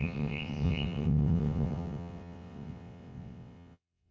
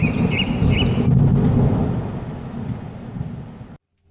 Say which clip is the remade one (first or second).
first